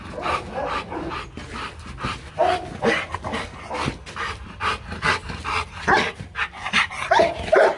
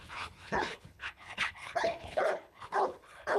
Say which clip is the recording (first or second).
first